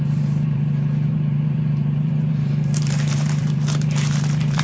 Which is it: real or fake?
fake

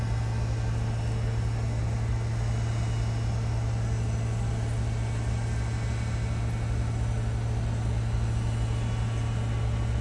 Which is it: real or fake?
real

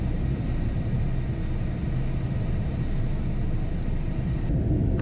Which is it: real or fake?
real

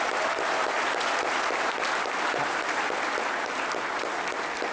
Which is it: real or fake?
real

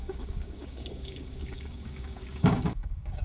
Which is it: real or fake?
fake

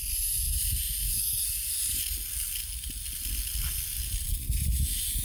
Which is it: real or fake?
real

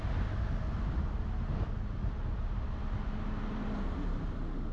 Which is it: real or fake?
real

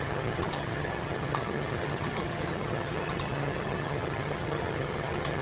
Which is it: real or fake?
fake